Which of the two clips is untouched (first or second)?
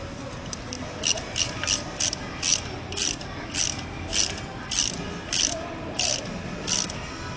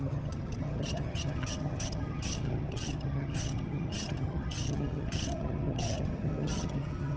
first